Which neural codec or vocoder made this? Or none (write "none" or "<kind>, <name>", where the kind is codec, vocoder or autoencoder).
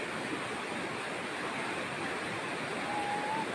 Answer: none